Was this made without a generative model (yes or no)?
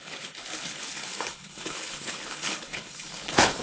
no